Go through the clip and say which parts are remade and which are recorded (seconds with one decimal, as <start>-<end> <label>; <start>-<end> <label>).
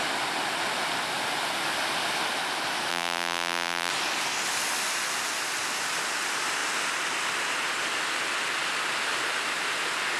0.0-2.9 recorded; 2.9-3.9 remade; 3.9-10.2 recorded